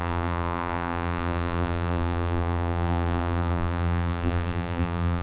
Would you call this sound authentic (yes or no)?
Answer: no